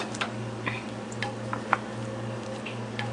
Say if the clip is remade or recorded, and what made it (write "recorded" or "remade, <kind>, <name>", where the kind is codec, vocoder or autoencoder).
recorded